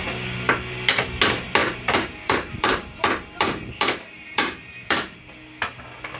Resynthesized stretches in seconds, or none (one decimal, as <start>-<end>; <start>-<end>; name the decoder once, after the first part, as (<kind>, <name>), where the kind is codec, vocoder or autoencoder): 1.6-5.2 (vocoder, BigVGAN v2)